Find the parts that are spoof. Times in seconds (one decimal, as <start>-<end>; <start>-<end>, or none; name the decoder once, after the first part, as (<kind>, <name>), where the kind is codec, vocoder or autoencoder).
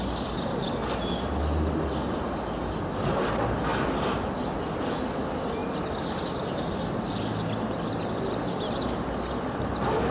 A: none